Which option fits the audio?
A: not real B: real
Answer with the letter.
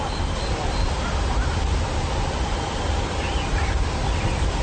B